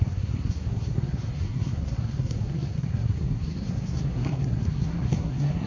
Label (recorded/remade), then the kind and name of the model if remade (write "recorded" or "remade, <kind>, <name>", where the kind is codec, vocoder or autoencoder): remade, codec, SNAC